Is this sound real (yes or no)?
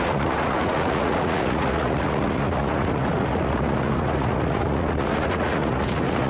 no